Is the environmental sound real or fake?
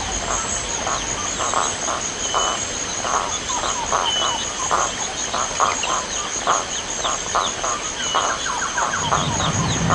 real